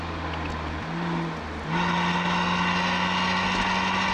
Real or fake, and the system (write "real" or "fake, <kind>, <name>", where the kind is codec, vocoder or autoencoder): real